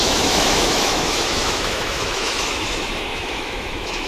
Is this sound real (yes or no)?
no